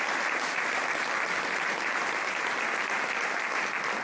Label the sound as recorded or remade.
recorded